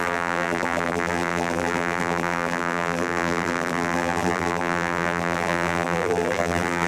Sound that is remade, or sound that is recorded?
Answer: remade